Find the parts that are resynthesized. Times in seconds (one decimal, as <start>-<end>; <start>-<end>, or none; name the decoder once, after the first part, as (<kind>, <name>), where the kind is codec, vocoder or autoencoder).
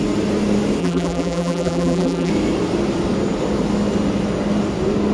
0.8-2.3 (vocoder, BigVGAN v2)